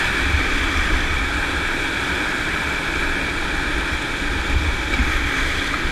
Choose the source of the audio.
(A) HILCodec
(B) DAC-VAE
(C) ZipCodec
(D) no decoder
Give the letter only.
D